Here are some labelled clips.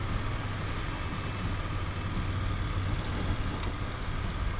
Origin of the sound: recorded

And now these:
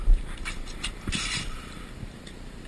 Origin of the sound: remade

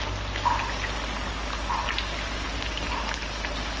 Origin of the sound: recorded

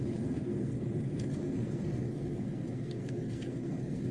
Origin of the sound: remade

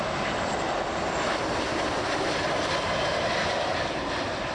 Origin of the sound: recorded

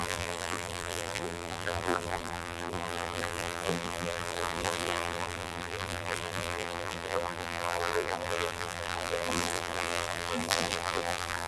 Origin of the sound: remade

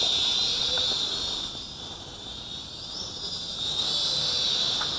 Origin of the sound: recorded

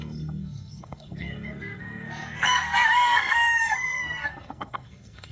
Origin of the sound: remade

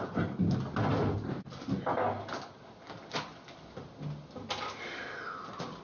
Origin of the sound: recorded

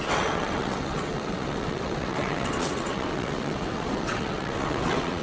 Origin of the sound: remade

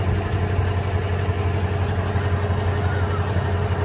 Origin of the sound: recorded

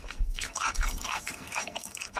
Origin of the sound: remade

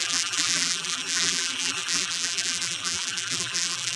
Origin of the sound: remade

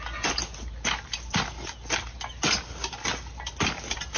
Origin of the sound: recorded